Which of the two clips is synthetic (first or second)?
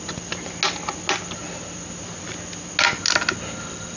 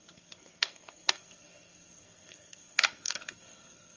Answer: second